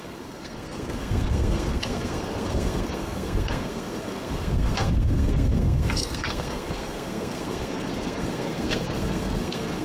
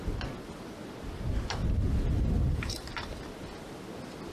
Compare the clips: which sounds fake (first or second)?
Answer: first